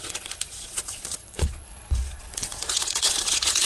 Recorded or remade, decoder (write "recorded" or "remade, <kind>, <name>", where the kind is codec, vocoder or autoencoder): remade, vocoder, Vocos